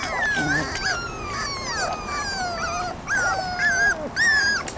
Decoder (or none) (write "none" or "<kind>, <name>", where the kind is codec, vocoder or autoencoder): none